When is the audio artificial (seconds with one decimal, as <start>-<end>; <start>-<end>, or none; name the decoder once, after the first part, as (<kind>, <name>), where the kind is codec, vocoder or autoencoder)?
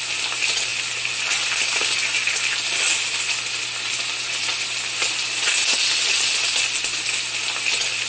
none